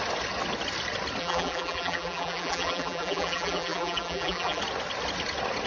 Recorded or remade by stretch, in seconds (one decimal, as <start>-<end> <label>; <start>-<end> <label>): 0.0-1.2 recorded; 1.2-4.6 remade; 4.6-5.7 recorded